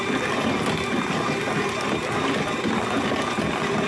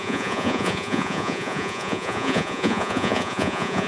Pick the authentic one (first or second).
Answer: first